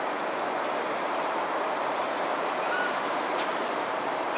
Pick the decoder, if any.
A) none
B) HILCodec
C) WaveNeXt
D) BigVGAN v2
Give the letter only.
D